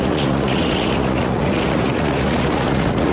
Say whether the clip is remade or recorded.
remade